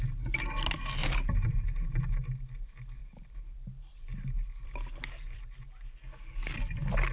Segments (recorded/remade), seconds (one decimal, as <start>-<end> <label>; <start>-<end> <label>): 0.0-1.0 recorded; 1.0-1.6 remade; 1.6-3.0 recorded; 3.0-5.6 remade; 5.6-7.1 recorded